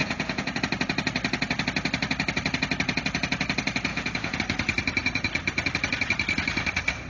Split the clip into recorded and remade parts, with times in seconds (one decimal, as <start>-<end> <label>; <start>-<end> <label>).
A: 0.0-0.6 remade; 0.6-3.9 recorded; 3.9-4.4 remade; 4.4-7.1 recorded